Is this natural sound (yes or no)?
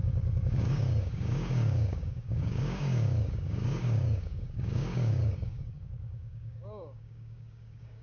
no